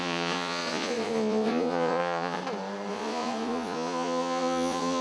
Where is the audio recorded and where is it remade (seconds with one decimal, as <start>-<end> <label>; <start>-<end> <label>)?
0.0-2.4 remade; 2.4-2.9 recorded; 2.9-5.0 remade